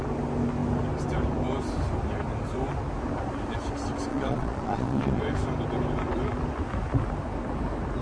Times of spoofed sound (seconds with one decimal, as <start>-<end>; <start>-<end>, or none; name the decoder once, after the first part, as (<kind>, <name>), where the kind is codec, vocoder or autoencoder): 4.1-5.2 (vocoder, Vocos)